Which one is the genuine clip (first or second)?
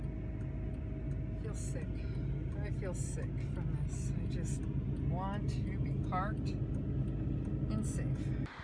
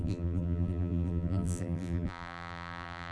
first